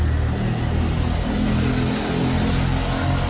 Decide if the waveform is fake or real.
real